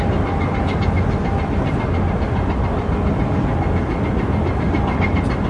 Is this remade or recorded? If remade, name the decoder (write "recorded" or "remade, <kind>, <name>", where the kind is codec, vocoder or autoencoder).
recorded